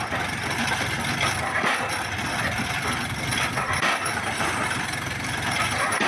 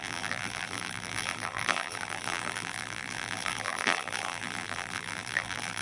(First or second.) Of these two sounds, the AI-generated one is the second